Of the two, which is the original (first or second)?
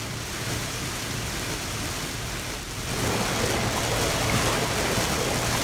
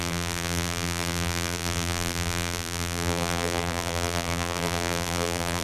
first